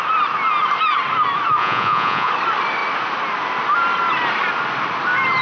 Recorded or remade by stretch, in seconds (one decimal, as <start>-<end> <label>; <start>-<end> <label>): 0.0-1.6 recorded; 1.6-2.3 remade; 2.3-5.4 recorded